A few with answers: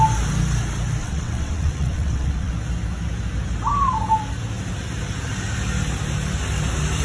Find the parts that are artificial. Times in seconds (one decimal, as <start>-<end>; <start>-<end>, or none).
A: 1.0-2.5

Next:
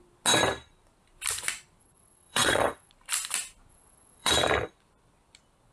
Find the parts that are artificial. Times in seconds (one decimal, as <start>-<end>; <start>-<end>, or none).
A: 1.8-2.9; 3.7-4.3

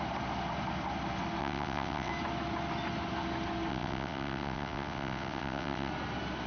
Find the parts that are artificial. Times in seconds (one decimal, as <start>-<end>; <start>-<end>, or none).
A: 1.4-2.1; 3.7-5.9